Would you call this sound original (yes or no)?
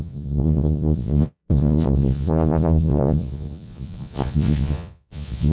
no